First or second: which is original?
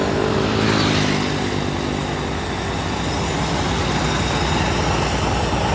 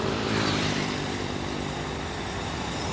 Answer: first